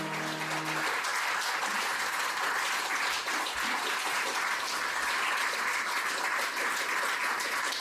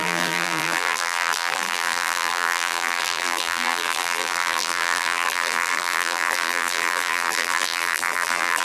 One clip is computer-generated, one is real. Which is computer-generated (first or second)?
second